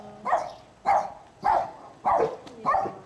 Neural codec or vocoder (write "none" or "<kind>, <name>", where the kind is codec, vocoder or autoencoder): none